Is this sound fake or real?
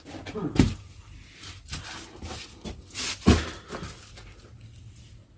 real